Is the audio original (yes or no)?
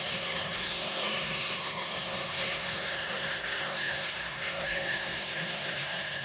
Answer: no